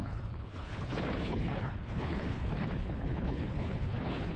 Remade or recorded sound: remade